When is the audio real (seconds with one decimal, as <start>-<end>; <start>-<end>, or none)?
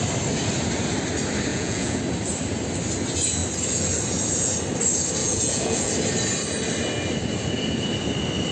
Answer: 0.0-1.5; 2.0-5.2; 5.9-8.5